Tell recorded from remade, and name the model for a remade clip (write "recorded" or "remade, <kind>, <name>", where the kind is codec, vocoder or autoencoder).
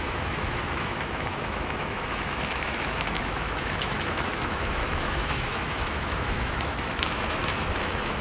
remade, autoencoder, DAC-VAE